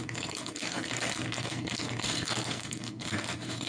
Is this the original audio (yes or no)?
no